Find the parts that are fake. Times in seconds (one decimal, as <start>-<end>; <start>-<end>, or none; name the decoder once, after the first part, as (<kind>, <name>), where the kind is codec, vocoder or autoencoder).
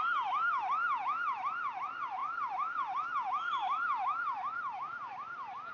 none